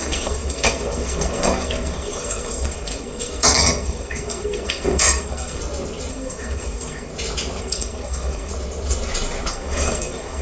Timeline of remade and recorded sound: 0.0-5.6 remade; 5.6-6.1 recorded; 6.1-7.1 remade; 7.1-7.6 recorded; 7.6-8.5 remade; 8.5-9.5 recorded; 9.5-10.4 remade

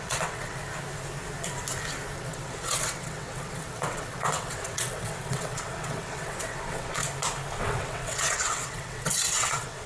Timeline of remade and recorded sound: 0.0-0.6 remade; 0.6-2.2 recorded; 2.2-7.0 remade; 7.0-7.6 recorded; 7.6-9.9 remade